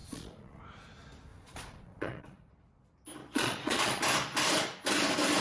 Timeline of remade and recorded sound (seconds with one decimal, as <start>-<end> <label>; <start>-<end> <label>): 0.0-0.6 remade; 0.6-1.3 recorded; 1.3-2.5 remade; 2.5-3.2 recorded; 3.2-4.0 remade; 4.0-5.4 recorded